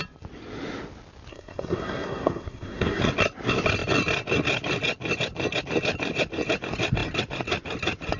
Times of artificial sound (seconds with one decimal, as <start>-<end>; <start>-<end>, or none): 1.3-3.0